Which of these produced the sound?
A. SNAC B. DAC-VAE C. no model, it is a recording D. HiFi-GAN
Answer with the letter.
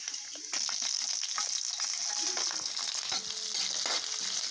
C